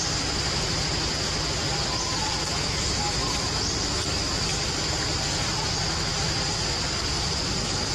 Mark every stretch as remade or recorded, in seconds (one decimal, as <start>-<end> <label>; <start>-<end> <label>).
0.0-7.9 recorded